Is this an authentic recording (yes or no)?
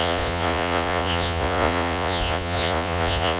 no